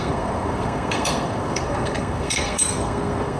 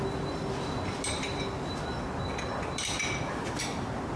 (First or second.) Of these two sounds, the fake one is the first